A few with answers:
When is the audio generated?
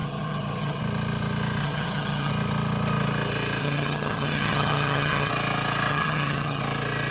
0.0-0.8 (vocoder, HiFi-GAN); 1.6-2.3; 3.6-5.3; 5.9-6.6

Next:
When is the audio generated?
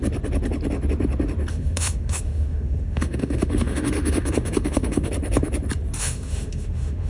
1.5-5.1 (autoencoder, DAC-VAE); 6.0-7.1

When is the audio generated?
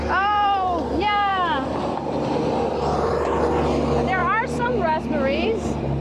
0.0-6.0 (vocoder, BigVGAN v2)